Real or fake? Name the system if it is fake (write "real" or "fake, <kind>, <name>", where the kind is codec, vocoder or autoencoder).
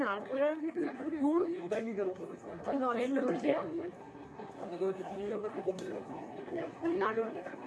fake, codec, SNAC